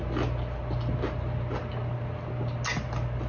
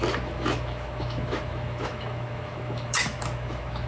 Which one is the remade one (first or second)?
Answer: second